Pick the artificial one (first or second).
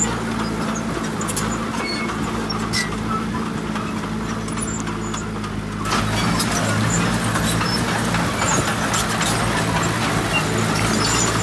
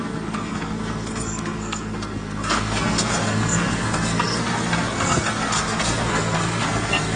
second